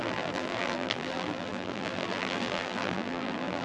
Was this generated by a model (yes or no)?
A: yes